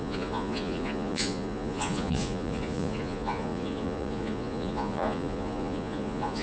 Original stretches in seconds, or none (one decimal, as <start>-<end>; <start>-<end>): none